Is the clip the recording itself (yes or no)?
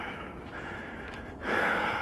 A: no